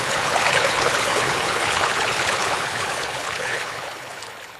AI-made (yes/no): yes